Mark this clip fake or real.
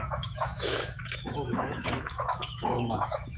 fake